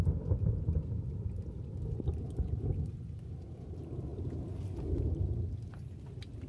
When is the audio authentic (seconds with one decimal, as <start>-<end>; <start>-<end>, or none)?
0.0-6.5